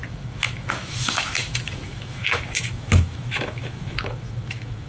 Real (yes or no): no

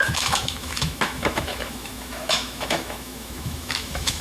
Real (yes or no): no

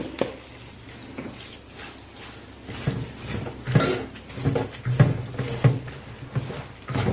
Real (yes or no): yes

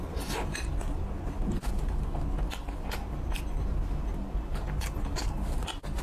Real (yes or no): yes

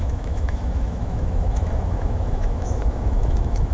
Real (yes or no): no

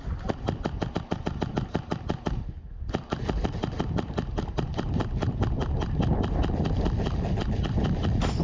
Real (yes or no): yes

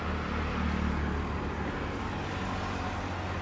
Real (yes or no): yes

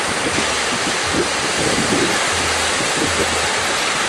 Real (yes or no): yes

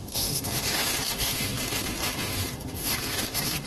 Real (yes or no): no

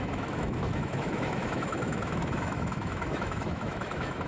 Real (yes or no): no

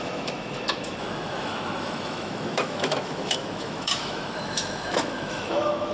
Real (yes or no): no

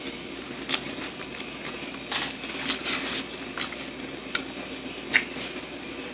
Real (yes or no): yes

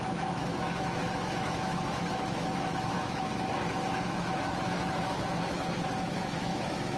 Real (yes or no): no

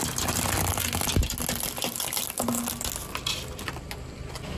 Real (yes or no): yes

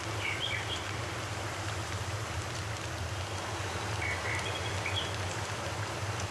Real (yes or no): yes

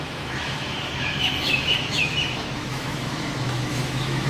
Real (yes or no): no